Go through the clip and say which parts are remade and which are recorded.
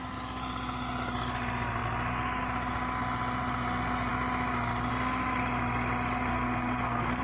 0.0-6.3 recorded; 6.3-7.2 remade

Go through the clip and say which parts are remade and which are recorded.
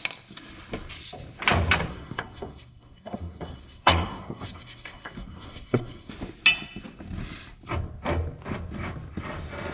0.0-1.9 recorded; 1.9-6.1 remade; 6.1-9.7 recorded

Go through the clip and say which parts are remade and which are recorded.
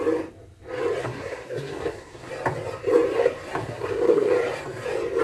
0.0-1.0 recorded; 1.0-2.3 remade; 2.3-3.6 recorded; 3.6-4.3 remade; 4.3-5.2 recorded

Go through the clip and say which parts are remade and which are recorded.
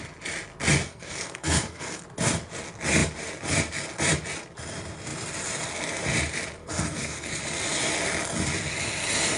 0.0-0.8 recorded; 0.8-2.0 remade; 2.0-6.6 recorded; 6.6-7.4 remade; 7.4-9.4 recorded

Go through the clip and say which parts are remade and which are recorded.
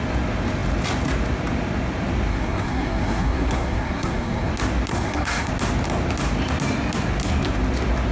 0.0-2.3 recorded; 2.3-4.5 remade; 4.5-4.9 recorded; 4.9-5.5 remade; 5.5-8.1 recorded